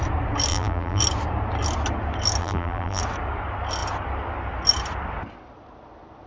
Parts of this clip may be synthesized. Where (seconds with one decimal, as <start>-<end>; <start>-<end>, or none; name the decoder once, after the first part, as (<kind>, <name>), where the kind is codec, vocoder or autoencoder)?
0.5-1.0 (vocoder, BigVGAN v2); 2.4-3.0